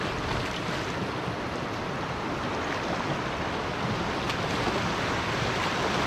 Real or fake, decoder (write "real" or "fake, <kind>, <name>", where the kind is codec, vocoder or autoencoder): real